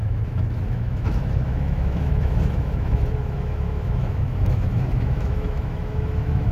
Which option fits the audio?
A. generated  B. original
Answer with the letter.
A